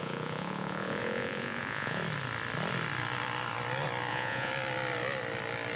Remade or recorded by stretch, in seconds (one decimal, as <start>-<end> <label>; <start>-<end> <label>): 0.0-2.0 remade; 2.0-4.1 recorded; 4.1-4.5 remade; 4.5-5.8 recorded